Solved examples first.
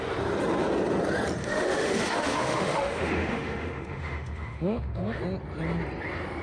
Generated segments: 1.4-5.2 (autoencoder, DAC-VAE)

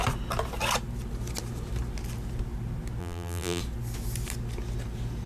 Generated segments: 3.0-3.6 (vocoder, BigVGAN v2)

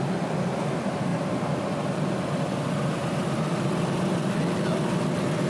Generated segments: none

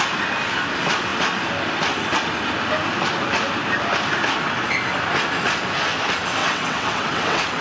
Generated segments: 6.4-7.6 (vocoder, WaveNeXt)

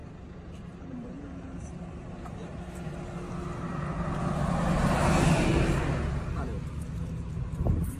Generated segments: 0.8-2.5 (vocoder, BigVGAN v2); 6.7-8.0

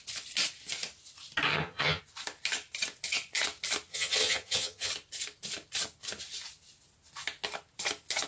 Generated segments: 1.5-2.0 (vocoder, HiFi-GAN); 3.9-4.9

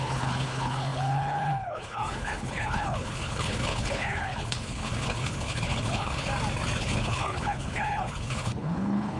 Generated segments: 0.0-6.3 (codec, HILCodec); 6.8-9.2

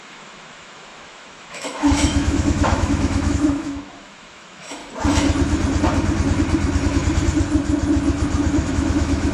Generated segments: 0.0-4.8 (autoencoder, DAC-VAE); 8.7-9.3